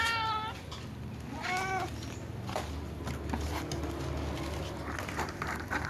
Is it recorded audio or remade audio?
recorded